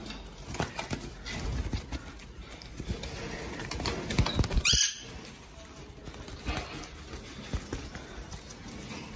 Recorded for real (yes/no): yes